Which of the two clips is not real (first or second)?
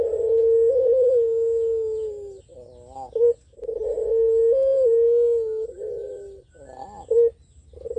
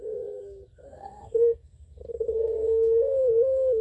second